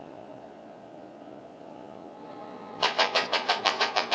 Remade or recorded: remade